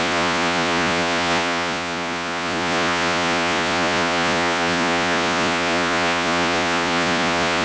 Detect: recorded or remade remade